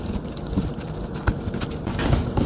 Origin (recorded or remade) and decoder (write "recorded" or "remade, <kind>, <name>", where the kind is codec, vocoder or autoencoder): recorded